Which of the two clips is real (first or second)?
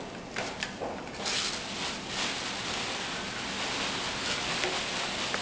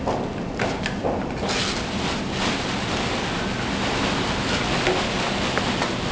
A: first